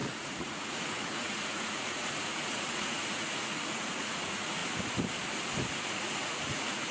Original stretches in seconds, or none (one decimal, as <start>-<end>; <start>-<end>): 4.6-5.8